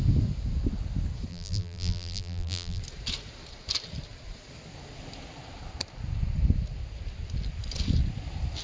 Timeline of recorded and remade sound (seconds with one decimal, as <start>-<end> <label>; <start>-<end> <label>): 0.0-1.3 recorded; 1.3-2.8 remade; 2.8-8.6 recorded